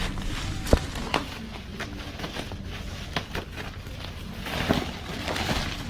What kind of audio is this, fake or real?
real